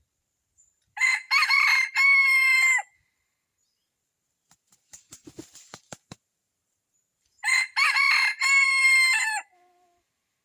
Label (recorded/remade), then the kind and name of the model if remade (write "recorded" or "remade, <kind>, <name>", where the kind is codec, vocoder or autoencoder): remade, vocoder, BigVGAN v2